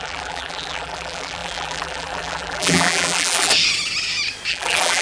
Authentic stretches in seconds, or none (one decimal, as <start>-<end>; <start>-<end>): 3.5-4.5